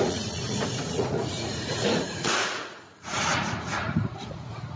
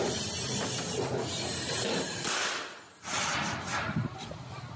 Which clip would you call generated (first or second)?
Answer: first